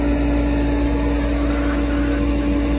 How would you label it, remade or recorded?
recorded